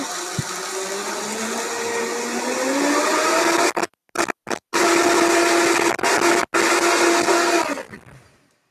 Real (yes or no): yes